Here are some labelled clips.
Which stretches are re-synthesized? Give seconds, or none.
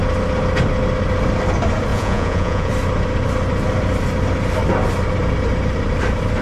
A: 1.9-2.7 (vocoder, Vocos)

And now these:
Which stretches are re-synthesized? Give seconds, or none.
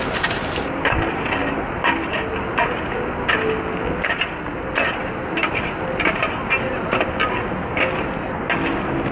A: none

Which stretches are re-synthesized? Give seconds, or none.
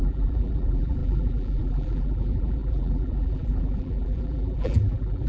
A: 0.0-5.3 (vocoder, BigVGAN v2)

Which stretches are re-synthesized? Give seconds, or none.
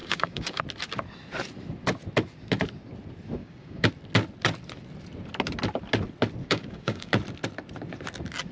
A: 0.0-0.6 (codec, DAC); 3.4-3.9; 6.4-7.1